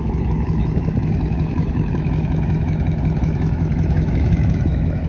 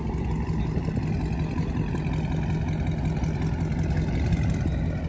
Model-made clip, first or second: first